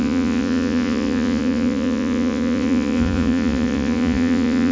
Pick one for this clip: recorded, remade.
remade